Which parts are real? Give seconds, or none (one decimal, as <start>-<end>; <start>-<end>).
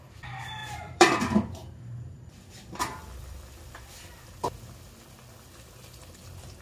0.0-0.6; 1.2-1.6; 4.3-6.6